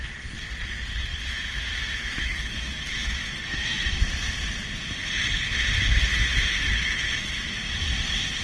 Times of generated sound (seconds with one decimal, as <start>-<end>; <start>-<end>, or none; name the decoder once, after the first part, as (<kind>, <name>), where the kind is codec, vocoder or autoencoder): 1.1-4.1 (autoencoder, DAC-VAE); 6.1-7.6

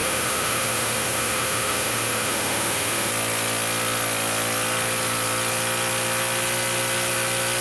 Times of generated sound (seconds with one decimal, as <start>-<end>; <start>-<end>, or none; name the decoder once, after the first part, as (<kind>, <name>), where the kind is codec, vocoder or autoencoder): 0.0-3.1 (autoencoder, DAC-VAE)

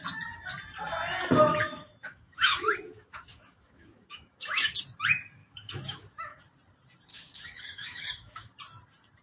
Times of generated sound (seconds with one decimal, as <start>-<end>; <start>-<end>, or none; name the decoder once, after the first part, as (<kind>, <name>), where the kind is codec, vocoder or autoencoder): 1.5-4.8 (autoencoder, DAC-VAE); 5.4-6.4; 7.1-8.5

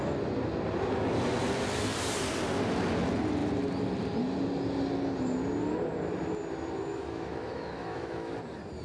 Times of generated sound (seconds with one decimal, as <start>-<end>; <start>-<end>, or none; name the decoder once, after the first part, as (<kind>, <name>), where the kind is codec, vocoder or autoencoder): 6.9-8.3 (autoencoder, DAC-VAE)

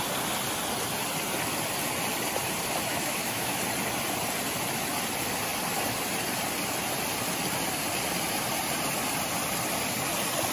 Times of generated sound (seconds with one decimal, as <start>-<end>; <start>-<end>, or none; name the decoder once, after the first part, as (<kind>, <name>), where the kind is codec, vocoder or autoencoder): 2.9-3.6 (autoencoder, DAC-VAE)